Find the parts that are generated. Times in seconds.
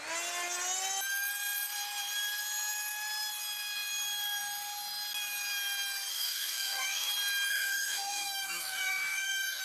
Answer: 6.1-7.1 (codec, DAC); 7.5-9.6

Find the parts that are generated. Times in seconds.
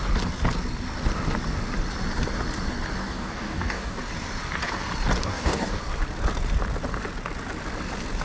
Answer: 3.0-4.0 (codec, DAC); 5.3-5.8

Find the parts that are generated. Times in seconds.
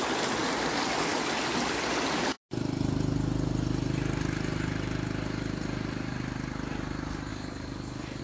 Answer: 7.3-8.2 (codec, DAC)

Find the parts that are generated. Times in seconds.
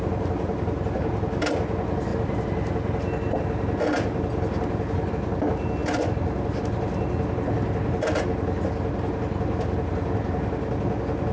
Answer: none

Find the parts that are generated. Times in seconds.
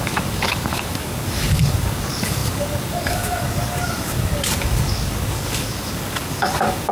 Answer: 0.0-6.9 (codec, DAC)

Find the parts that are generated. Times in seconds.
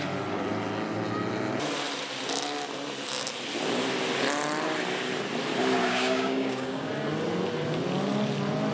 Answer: 5.8-6.9 (codec, DAC)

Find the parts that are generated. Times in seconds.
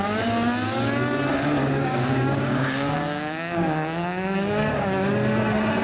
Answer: 1.6-5.1 (codec, DAC)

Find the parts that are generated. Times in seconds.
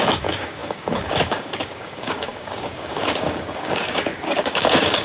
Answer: 0.0-5.0 (codec, DAC)